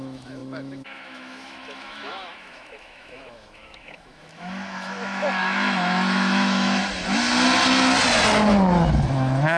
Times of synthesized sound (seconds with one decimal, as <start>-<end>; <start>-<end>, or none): 0.0-6.8; 8.9-9.6